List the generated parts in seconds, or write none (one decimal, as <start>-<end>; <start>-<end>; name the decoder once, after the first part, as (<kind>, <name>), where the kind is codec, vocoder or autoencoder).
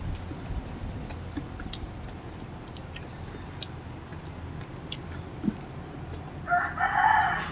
none